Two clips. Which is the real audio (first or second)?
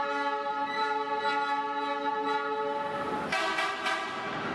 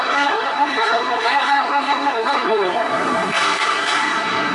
first